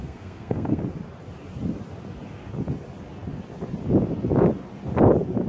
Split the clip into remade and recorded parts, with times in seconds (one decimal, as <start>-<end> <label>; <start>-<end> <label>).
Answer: 0.0-0.8 remade; 0.8-5.5 recorded

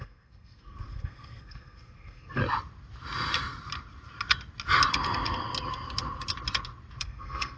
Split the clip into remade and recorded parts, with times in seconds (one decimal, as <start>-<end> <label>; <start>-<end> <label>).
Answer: 0.0-2.4 remade; 2.4-7.0 recorded; 7.0-7.6 remade

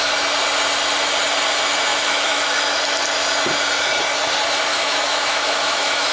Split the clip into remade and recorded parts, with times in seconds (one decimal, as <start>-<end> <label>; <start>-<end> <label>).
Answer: 0.0-1.9 recorded; 1.9-2.8 remade; 2.8-4.7 recorded; 4.7-6.1 remade

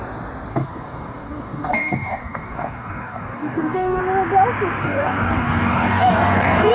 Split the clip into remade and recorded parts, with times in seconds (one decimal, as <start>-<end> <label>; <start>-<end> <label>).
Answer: 0.0-0.5 recorded; 0.5-4.0 remade; 4.0-4.8 recorded; 4.8-6.7 remade

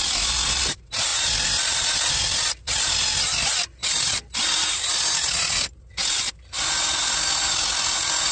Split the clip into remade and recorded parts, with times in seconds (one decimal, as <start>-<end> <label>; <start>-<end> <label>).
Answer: 0.0-8.3 recorded

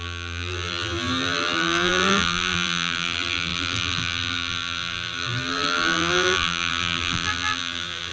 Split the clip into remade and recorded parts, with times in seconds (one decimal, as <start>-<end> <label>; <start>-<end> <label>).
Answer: 0.0-8.1 remade